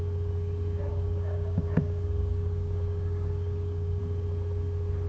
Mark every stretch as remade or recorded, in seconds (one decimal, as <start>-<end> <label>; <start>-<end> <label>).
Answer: 0.0-0.9 recorded; 0.9-4.0 remade; 4.0-5.1 recorded